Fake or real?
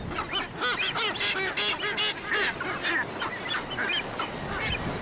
real